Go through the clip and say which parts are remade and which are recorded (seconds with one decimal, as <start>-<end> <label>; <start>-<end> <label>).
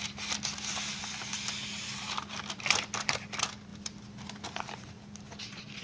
0.0-5.8 recorded